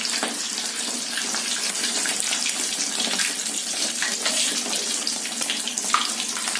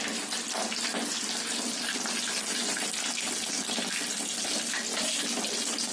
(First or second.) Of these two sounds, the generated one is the first